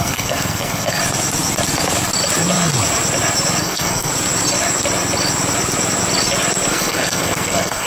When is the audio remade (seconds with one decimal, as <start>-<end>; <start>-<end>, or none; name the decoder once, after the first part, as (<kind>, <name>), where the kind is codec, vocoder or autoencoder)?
0.0-1.0 (codec, SNAC); 3.6-4.1; 6.7-7.9